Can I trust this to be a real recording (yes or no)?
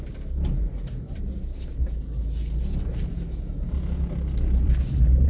yes